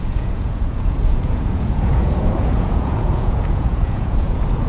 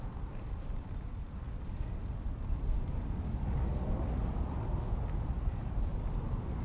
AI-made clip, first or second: first